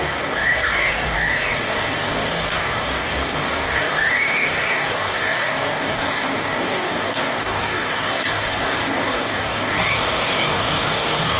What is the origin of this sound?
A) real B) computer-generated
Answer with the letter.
B